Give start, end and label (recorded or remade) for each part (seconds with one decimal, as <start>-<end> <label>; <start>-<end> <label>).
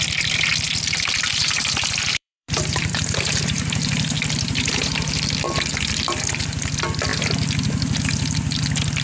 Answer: 0.0-1.3 recorded; 1.3-5.2 remade; 5.2-9.0 recorded